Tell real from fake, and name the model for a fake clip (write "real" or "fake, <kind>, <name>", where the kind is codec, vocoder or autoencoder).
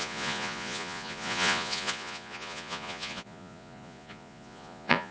fake, vocoder, Vocos